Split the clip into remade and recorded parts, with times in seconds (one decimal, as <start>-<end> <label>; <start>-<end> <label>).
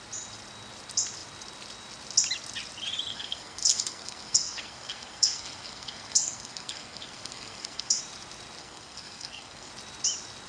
0.0-3.1 recorded; 3.1-8.0 remade; 8.0-8.6 recorded; 8.6-9.7 remade; 9.7-10.5 recorded